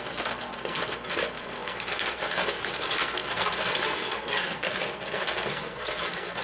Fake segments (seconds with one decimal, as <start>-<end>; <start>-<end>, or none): 0.0-6.4